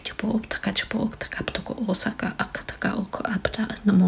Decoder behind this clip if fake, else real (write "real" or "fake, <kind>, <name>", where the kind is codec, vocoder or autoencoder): real